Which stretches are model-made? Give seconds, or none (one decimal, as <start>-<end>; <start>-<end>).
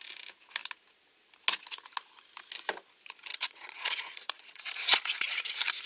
3.3-5.5